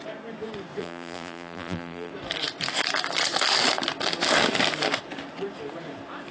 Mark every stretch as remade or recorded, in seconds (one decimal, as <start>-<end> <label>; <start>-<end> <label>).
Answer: 0.0-0.8 recorded; 0.8-2.1 remade; 2.1-6.3 recorded